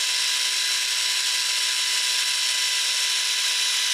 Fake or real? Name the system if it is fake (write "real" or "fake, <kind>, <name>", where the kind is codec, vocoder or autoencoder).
real